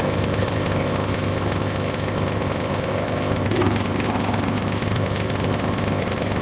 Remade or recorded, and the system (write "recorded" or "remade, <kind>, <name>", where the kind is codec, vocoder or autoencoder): remade, codec, ZipCodec